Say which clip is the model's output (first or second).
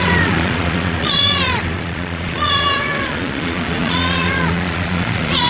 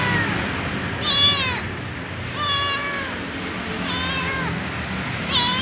first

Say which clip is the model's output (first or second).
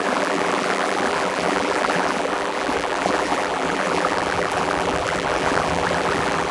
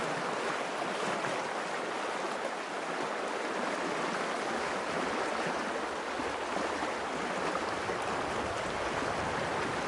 first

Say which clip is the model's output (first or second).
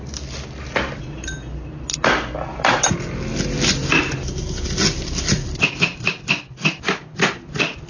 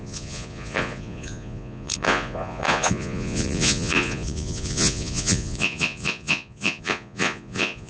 second